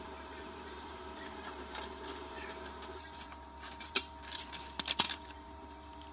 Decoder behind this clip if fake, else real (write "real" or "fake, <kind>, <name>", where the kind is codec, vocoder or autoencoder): fake, vocoder, BigVGAN v2